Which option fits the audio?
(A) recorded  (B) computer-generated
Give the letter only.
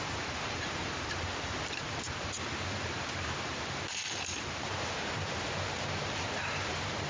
B